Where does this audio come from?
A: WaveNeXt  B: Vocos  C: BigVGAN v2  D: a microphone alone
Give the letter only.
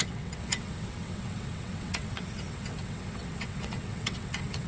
A